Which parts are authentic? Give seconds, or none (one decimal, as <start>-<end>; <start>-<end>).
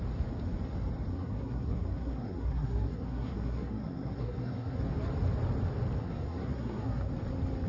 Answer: 0.0-1.1; 4.8-6.0; 7.1-7.7